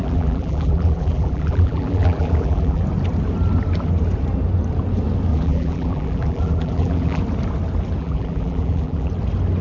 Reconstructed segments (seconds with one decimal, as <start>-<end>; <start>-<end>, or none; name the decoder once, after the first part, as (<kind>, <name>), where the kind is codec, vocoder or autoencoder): 0.0-2.8 (vocoder, BigVGAN v2); 5.3-7.2; 8.0-9.1